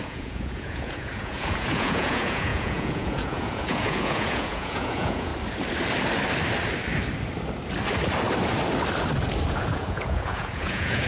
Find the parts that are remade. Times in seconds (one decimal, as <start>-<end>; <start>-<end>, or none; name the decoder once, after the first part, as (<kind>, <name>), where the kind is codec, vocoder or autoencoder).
0.0-5.3 (vocoder, Vocos); 9.5-11.1